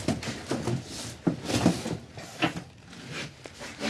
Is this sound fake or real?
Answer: real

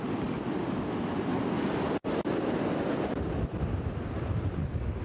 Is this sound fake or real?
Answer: real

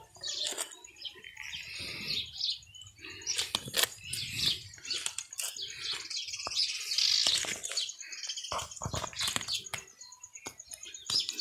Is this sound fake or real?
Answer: real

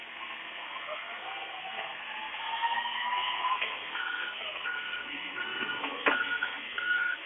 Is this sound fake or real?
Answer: fake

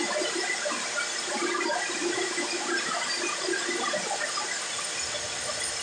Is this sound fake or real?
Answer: real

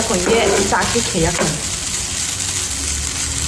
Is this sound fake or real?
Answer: real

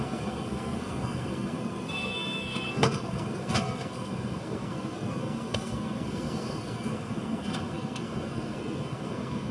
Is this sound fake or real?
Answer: fake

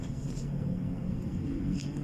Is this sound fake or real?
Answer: fake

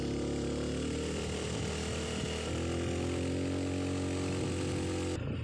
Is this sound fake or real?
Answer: real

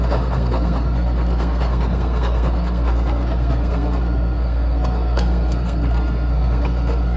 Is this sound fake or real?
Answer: fake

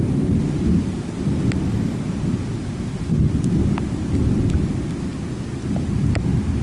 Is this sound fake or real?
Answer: real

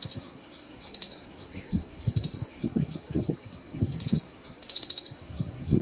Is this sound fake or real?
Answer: fake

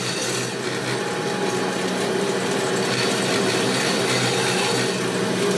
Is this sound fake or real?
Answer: real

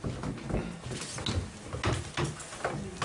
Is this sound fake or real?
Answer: real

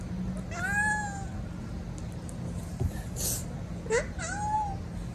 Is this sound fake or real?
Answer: real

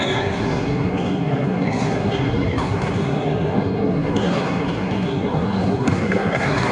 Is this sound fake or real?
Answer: fake